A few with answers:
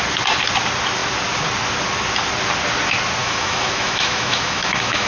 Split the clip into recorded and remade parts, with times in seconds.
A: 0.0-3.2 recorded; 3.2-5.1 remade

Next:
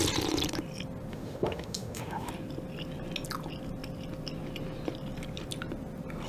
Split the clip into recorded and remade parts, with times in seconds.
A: 0.0-1.1 recorded; 1.1-2.3 remade; 2.3-6.3 recorded

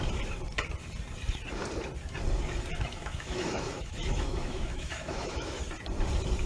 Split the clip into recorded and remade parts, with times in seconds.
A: 0.0-2.7 recorded; 2.7-5.6 remade; 5.6-6.5 recorded

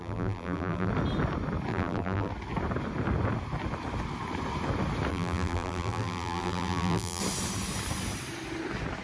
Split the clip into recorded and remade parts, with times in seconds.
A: 0.0-0.9 remade; 0.9-1.7 recorded; 1.7-2.3 remade; 2.3-5.1 recorded; 5.1-7.2 remade; 7.2-9.0 recorded